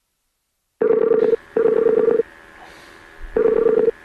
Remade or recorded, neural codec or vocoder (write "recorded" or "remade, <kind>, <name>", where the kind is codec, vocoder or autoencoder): recorded